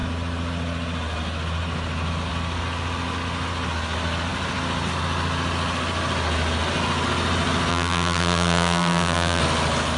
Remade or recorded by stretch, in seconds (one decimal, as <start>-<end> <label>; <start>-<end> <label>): 0.0-7.7 recorded; 7.7-9.4 remade; 9.4-10.0 recorded